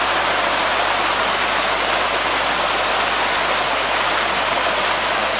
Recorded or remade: recorded